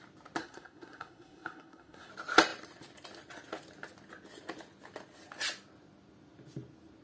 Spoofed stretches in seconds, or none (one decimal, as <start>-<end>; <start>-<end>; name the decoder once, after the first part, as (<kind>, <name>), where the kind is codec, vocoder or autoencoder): 0.4-2.1 (codec, SNAC)